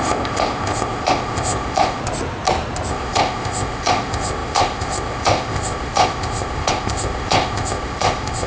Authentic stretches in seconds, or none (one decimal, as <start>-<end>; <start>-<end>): 2.0-2.9